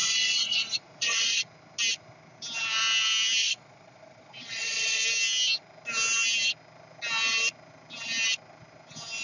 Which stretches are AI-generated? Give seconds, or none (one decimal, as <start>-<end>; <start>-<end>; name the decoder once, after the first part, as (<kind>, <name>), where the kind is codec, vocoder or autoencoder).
0.0-1.4 (vocoder, Vocos); 3.4-5.0